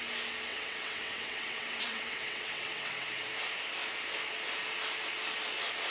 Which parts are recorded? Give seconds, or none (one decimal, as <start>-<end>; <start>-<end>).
0.0-0.5; 3.3-5.9